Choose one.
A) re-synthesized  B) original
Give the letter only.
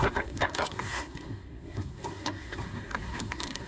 A